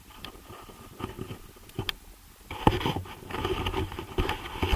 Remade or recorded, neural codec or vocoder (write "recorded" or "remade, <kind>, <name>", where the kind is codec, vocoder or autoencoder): recorded